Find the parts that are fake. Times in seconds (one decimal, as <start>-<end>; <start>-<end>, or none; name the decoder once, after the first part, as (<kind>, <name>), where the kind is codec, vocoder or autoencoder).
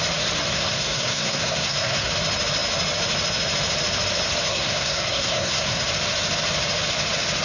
0.5-2.1 (codec, SNAC); 4.5-5.8